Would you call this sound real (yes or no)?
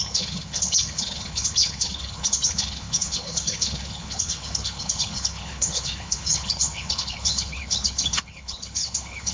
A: no